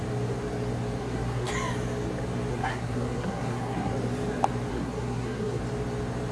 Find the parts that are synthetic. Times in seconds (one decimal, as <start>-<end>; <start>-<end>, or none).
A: 1.0-1.5; 2.5-3.9; 4.7-5.6

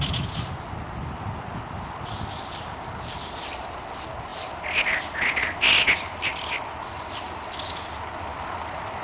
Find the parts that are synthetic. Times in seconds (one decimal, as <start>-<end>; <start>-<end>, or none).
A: none

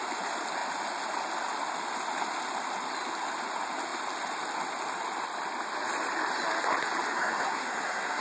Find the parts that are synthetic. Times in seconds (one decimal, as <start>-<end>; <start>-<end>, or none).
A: 7.1-8.2

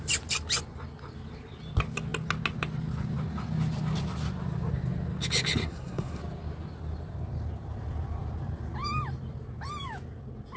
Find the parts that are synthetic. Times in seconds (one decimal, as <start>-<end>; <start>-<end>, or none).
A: 5.6-6.2

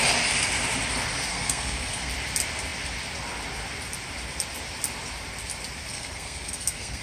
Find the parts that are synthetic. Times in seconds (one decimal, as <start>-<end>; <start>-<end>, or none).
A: 1.3-2.1; 5.9-7.0